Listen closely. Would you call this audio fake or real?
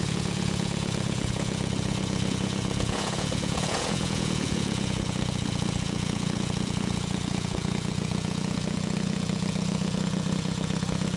fake